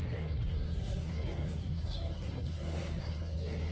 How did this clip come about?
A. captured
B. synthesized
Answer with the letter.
B